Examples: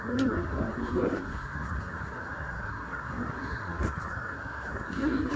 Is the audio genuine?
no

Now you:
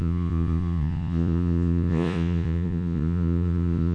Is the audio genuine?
no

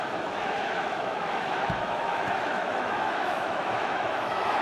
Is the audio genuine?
no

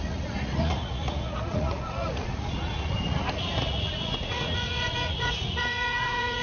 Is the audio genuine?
no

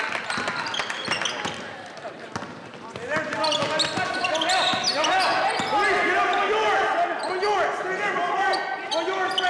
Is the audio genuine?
yes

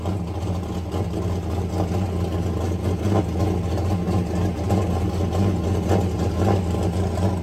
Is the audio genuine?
yes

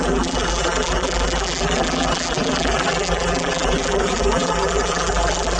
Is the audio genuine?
no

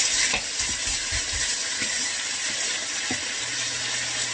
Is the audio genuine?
yes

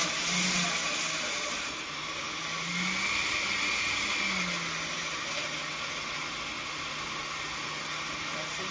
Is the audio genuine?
yes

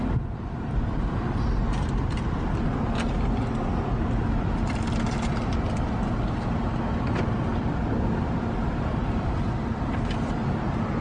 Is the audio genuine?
yes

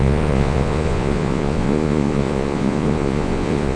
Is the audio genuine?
no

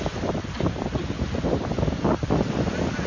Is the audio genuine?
yes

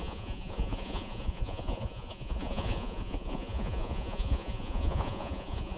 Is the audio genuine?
no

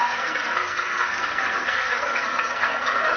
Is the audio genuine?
no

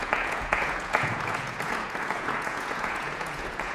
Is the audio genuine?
no